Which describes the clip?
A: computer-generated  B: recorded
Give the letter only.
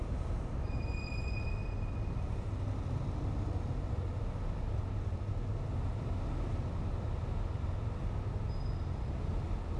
B